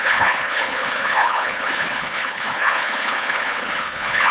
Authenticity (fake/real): fake